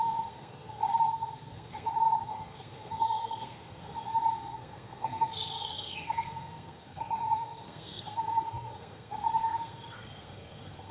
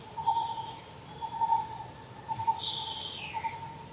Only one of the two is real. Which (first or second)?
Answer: second